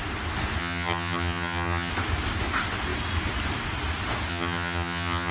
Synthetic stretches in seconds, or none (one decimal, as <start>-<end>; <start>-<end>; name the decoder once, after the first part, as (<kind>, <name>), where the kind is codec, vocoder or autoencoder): 0.6-1.9 (vocoder, HiFi-GAN); 4.3-5.3